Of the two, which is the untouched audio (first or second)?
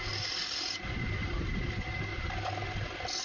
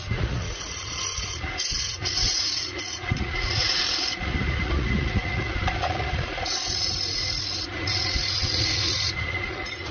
first